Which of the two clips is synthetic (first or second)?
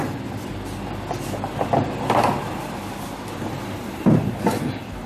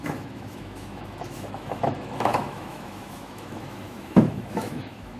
second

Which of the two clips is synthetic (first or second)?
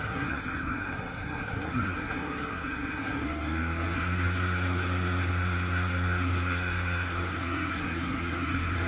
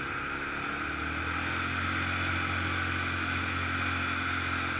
first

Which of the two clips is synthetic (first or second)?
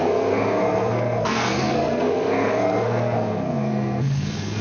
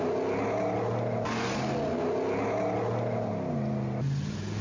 first